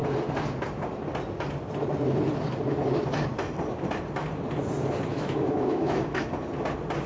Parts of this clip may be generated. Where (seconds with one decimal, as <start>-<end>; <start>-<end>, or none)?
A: 5.1-6.3